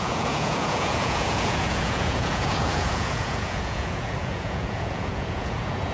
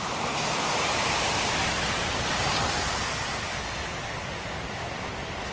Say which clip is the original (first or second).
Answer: second